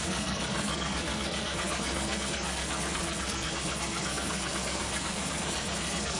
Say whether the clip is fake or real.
fake